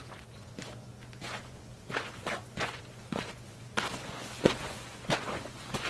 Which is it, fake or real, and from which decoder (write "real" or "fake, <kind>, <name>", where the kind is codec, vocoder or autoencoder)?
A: fake, vocoder, Vocos